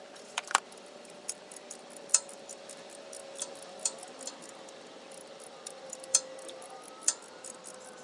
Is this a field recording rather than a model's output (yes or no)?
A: no